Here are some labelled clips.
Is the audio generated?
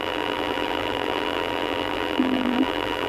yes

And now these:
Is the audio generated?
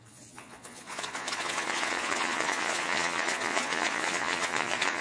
yes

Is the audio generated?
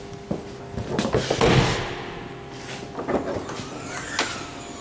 no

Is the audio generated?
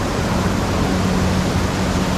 no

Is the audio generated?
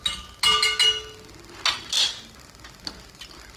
no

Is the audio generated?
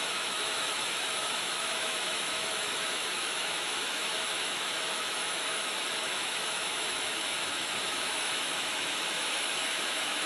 yes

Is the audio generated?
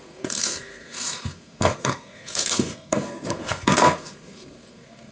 yes